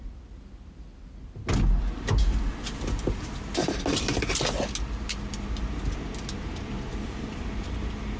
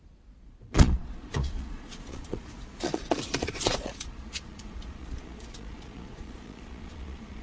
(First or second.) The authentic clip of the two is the first